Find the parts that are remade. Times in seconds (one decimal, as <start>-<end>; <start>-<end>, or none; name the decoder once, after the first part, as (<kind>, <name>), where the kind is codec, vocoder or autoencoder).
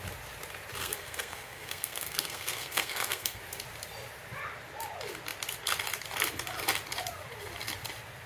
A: 0.8-3.4 (codec, SNAC)